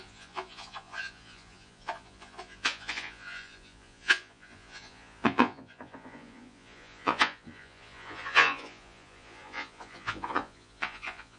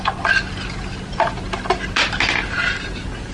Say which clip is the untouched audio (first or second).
second